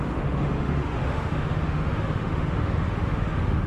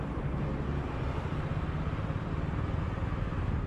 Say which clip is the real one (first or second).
second